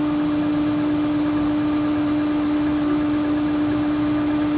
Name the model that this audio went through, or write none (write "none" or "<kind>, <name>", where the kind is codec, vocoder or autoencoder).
none